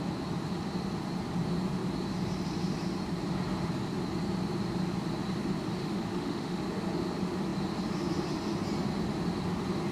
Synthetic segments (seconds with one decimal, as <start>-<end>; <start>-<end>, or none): 5.8-6.6